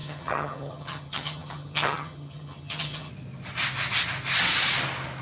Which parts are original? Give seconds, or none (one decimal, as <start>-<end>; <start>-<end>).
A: 3.1-5.2